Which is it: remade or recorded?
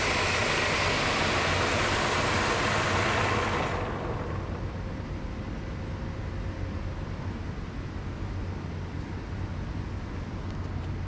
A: recorded